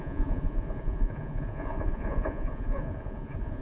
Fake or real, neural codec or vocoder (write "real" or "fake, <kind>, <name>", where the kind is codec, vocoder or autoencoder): fake, vocoder, Vocos